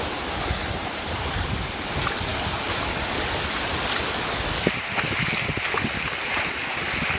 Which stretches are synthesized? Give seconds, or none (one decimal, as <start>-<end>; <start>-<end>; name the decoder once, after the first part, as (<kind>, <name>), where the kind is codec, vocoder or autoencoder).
0.6-1.7 (vocoder, BigVGAN v2)